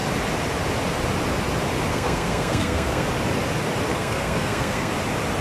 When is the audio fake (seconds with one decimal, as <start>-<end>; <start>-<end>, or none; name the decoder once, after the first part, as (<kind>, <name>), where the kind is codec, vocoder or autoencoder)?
1.9-3.1 (codec, SNAC); 3.9-4.9